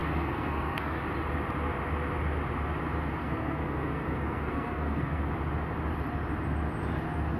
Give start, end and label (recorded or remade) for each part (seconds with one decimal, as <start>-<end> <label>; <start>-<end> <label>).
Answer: 0.0-1.0 remade; 1.0-3.2 recorded; 3.2-5.3 remade; 5.3-7.4 recorded